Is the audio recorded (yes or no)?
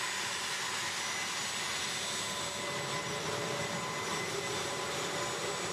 yes